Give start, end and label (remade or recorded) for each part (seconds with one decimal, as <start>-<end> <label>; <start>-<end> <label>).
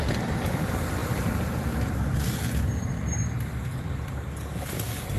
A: 0.0-5.2 recorded